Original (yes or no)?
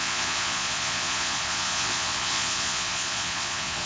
no